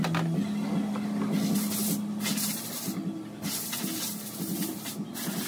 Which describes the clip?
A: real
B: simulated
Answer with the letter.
A